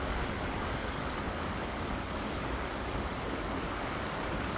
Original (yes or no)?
no